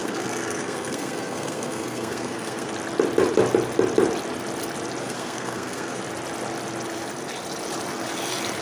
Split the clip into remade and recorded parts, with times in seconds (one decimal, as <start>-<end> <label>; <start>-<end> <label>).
0.0-2.7 remade; 2.7-5.0 recorded; 5.0-6.0 remade; 6.0-8.6 recorded